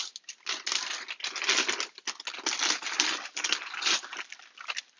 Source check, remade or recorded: recorded